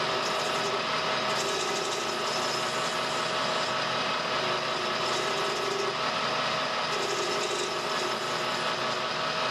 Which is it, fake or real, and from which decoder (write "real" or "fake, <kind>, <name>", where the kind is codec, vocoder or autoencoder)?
real